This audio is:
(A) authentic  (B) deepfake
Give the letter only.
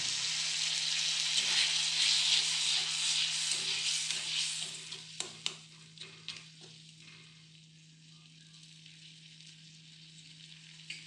A